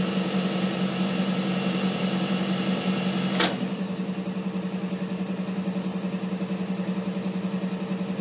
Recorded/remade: recorded